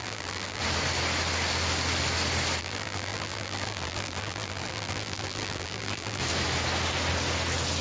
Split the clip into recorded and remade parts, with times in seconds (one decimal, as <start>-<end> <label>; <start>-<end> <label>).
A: 0.0-0.6 remade; 0.6-2.6 recorded; 2.6-6.2 remade; 6.2-7.8 recorded